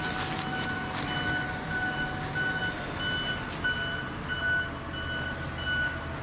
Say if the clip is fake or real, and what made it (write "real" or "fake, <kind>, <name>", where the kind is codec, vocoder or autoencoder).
real